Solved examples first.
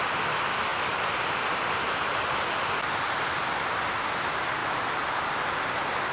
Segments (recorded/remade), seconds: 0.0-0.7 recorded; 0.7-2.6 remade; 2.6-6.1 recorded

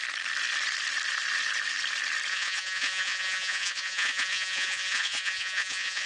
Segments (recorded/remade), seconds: 0.0-2.3 recorded; 2.3-6.1 remade